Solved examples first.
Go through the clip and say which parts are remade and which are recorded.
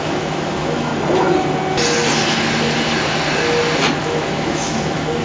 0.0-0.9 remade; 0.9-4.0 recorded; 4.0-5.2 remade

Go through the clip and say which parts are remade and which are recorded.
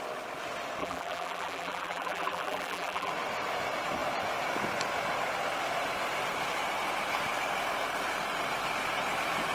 0.0-0.8 recorded; 0.8-3.1 remade; 3.1-9.5 recorded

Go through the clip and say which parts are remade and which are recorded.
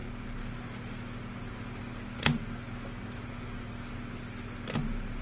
0.0-5.2 recorded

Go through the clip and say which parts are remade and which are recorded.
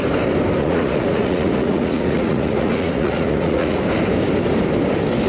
0.0-0.6 recorded; 0.6-3.8 remade; 3.8-5.3 recorded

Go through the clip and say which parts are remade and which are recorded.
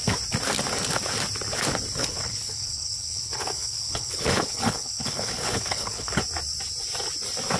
0.0-2.0 recorded; 2.0-6.2 remade; 6.2-7.6 recorded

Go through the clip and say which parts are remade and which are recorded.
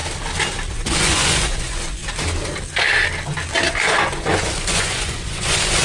0.0-0.7 recorded; 0.7-2.0 remade; 2.0-3.7 recorded; 3.7-5.8 remade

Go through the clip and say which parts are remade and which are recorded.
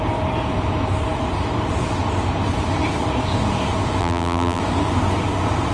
0.0-4.0 recorded; 4.0-4.6 remade; 4.6-5.7 recorded